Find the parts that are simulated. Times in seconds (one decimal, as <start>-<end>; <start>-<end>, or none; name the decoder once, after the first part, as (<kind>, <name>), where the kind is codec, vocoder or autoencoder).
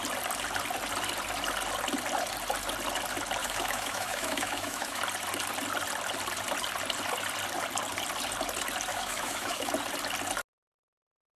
3.4-5.0 (autoencoder, DAC-VAE); 8.9-9.7